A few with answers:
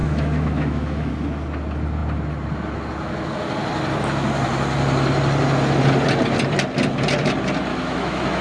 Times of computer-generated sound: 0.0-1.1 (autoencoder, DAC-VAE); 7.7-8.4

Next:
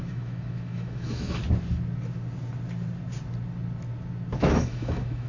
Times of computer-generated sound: 0.0-1.4 (autoencoder, DAC-VAE); 4.4-5.3